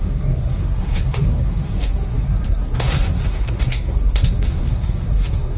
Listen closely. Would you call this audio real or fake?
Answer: fake